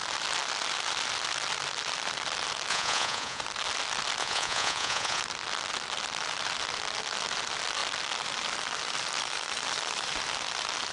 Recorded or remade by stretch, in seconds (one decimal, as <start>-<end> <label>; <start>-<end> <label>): 0.0-2.7 recorded; 2.7-3.4 remade; 3.4-4.2 recorded; 4.2-5.2 remade; 5.2-10.9 recorded